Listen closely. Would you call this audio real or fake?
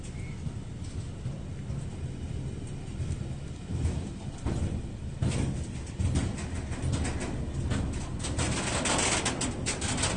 real